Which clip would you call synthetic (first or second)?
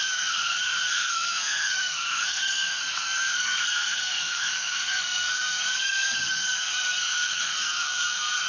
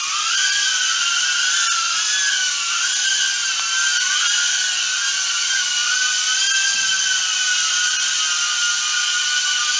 first